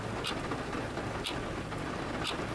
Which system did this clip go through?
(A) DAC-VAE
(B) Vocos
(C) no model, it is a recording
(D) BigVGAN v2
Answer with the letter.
D